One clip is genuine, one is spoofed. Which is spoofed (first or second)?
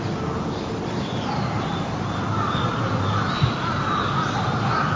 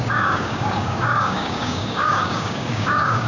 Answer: second